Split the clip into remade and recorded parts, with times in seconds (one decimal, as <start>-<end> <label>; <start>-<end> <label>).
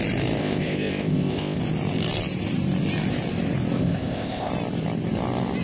0.0-0.4 recorded; 0.4-1.6 remade; 1.6-3.8 recorded; 3.8-4.5 remade; 4.5-5.6 recorded